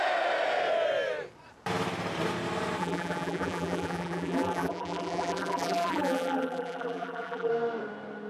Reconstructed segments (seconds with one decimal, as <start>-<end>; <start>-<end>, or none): 2.8-7.5